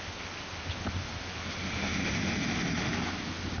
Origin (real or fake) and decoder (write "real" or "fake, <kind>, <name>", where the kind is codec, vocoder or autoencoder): real